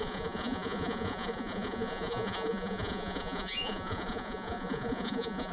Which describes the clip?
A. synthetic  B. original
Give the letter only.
A